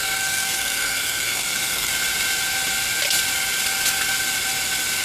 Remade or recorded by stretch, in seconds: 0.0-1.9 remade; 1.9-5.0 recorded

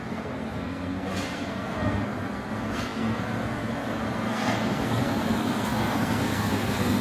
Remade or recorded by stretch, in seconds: 0.0-7.0 remade

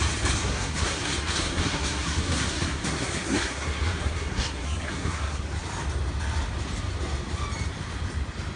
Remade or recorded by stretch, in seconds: 0.0-0.4 recorded; 0.4-5.4 remade; 5.4-8.6 recorded

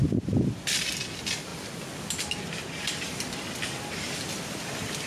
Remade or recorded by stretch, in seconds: 0.0-5.1 recorded

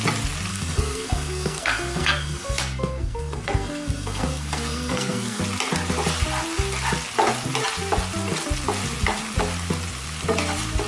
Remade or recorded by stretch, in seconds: 0.0-0.5 recorded; 0.5-5.4 remade; 5.4-10.9 recorded

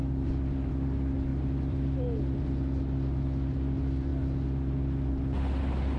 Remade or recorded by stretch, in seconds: 0.0-6.0 recorded

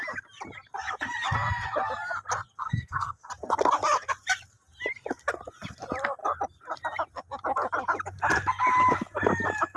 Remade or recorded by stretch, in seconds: 0.0-2.6 recorded; 2.6-3.3 remade; 3.3-9.8 recorded